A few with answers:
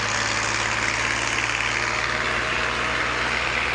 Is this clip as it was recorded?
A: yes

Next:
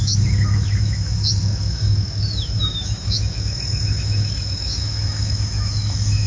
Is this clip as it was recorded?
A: no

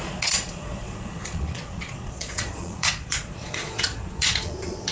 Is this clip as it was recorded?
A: no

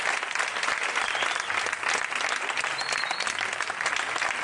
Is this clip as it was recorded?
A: yes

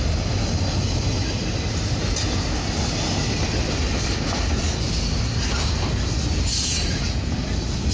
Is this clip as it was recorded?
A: yes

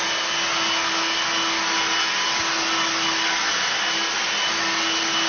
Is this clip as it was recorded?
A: yes